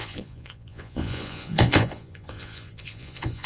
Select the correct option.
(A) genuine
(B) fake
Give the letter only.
B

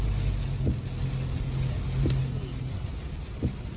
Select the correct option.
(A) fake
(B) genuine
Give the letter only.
B